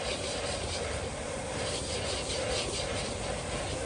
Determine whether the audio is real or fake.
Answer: fake